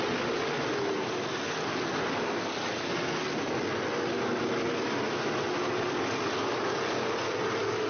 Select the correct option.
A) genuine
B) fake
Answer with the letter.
A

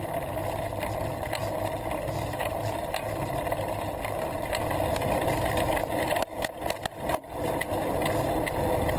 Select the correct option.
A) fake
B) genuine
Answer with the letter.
B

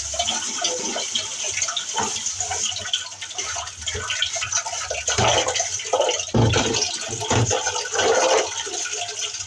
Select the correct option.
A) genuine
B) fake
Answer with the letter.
A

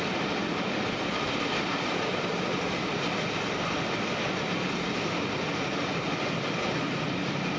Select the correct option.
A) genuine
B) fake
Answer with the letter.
A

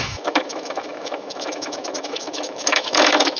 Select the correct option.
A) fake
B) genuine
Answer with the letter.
A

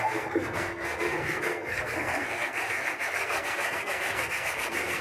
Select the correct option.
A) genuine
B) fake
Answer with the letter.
B